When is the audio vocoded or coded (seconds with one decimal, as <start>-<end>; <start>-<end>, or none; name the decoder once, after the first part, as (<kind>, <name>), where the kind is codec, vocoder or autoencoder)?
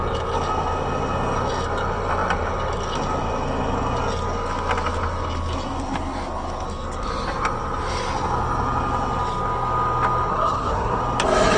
10.3-11.0 (codec, SNAC)